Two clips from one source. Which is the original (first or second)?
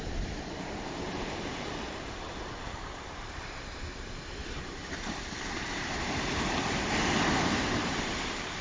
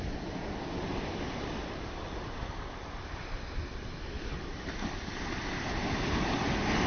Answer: second